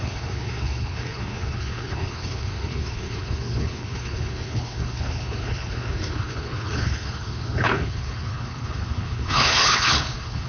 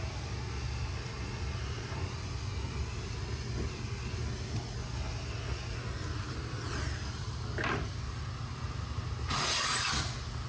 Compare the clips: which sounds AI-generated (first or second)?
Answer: first